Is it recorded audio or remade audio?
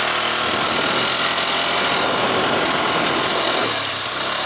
recorded